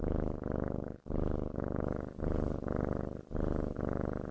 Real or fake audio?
real